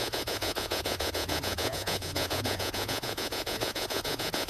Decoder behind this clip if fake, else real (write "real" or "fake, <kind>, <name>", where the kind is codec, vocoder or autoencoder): fake, vocoder, Vocos